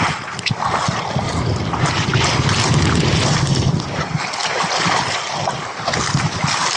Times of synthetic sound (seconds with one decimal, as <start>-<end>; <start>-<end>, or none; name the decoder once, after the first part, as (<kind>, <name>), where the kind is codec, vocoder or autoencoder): none